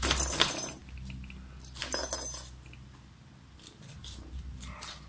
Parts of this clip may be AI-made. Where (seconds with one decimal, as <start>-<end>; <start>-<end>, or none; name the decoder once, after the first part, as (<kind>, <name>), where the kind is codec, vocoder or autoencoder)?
none